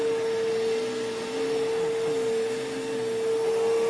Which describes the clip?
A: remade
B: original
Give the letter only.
B